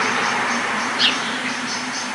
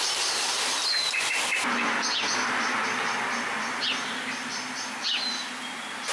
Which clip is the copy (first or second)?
first